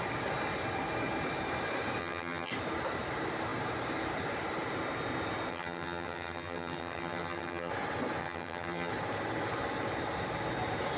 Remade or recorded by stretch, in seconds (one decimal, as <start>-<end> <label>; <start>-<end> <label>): 0.0-2.0 recorded; 2.0-2.5 remade; 2.5-5.5 recorded; 5.5-7.7 remade; 7.7-8.2 recorded; 8.2-8.9 remade; 8.9-11.0 recorded